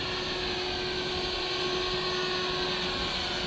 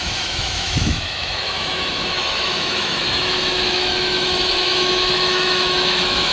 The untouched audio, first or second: first